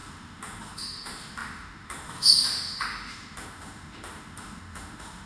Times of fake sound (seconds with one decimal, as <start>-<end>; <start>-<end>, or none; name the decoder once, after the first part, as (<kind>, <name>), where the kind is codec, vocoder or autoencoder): 0.0-5.3 (autoencoder, DAC-VAE)